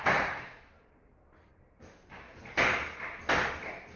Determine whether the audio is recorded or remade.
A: recorded